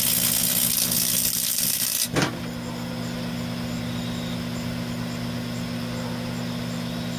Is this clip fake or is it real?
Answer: real